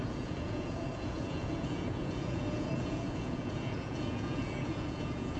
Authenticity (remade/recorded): remade